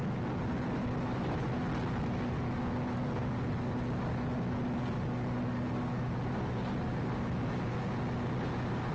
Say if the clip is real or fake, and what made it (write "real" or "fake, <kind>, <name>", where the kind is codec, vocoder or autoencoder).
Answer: real